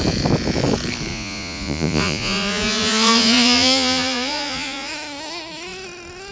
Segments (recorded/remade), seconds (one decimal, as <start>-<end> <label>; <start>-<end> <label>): 0.0-1.1 recorded; 1.1-4.9 remade; 4.9-6.3 recorded